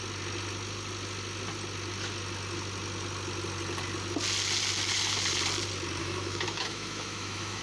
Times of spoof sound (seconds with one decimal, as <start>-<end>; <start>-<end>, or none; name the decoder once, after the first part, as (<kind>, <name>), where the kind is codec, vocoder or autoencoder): 6.0-7.6 (autoencoder, DAC-VAE)